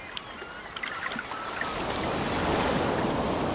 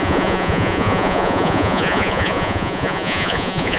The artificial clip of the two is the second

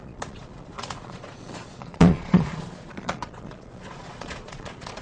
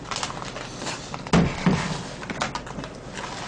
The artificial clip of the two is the first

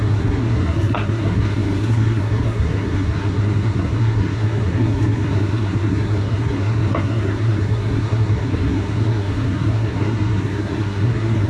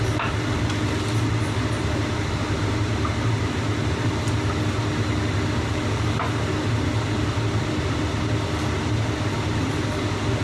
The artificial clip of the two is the first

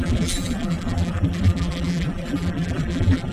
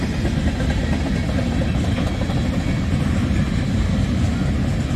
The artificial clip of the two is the first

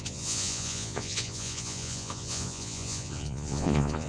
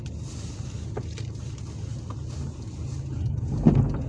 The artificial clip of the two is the first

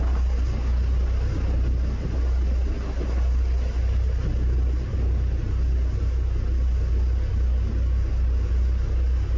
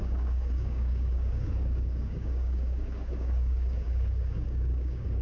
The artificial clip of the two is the second